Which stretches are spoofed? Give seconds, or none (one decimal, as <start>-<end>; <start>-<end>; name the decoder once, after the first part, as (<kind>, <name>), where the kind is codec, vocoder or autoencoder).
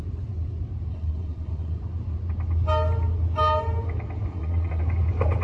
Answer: 0.9-1.8 (vocoder, WaveNeXt); 4.3-4.8